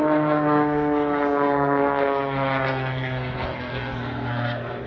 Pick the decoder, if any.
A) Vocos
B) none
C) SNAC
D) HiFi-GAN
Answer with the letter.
C